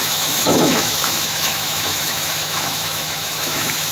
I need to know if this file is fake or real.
fake